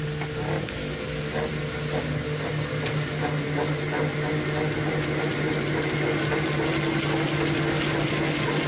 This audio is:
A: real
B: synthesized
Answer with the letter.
A